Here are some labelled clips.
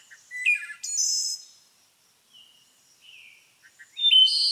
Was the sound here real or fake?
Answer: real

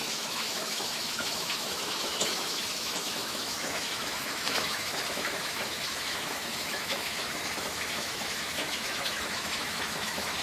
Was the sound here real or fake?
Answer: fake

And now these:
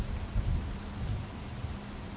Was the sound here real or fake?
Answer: real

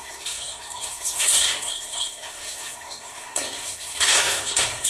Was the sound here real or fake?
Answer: fake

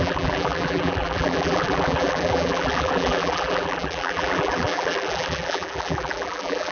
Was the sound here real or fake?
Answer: fake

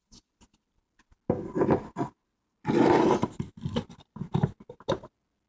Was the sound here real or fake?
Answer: real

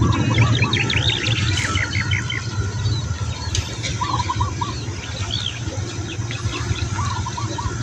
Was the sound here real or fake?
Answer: real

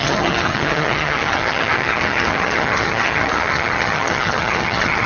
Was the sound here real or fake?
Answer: fake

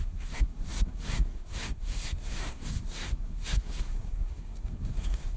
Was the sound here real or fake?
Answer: fake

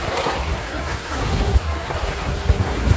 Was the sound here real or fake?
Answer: fake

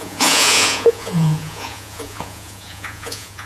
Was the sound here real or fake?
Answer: fake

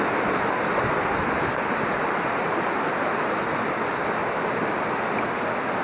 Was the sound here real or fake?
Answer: real